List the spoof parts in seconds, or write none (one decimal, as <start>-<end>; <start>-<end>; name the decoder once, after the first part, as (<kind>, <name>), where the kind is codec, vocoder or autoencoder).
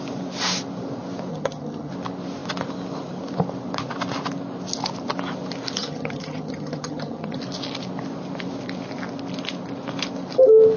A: 1.3-1.9 (vocoder, HiFi-GAN); 5.8-7.4